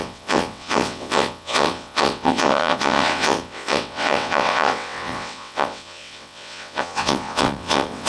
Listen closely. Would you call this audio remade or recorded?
remade